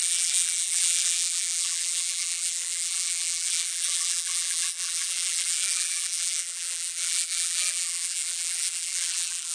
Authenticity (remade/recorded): remade